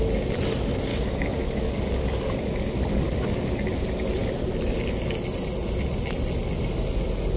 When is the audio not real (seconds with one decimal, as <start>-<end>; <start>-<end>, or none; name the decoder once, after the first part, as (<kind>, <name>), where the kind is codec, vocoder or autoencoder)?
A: 0.9-2.3 (codec, DAC)